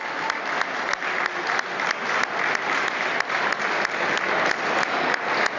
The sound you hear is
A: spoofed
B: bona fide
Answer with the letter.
B